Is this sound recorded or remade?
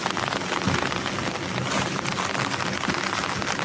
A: recorded